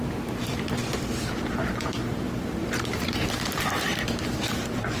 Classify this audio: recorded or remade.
remade